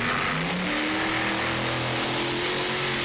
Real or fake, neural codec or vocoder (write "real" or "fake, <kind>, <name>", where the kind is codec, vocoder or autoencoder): real